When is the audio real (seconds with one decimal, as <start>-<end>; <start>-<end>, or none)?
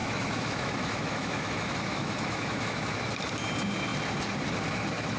3.1-5.2